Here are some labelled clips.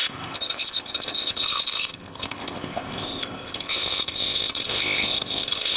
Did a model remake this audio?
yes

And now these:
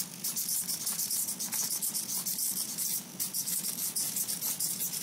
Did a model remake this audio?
no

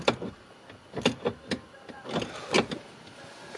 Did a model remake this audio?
no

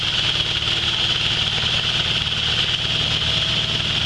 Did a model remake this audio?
no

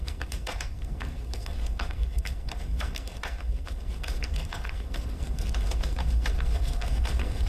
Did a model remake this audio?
yes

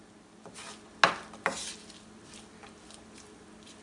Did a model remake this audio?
no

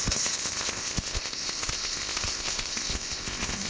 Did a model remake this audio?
yes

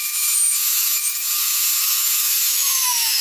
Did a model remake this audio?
yes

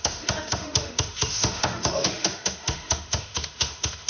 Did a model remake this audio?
yes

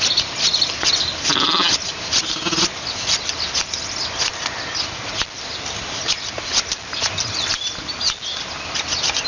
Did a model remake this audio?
no